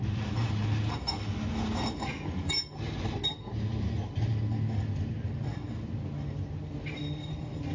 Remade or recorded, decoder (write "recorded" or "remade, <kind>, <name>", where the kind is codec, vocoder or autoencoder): recorded